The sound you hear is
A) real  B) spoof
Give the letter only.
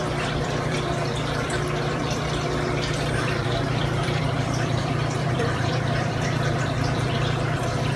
B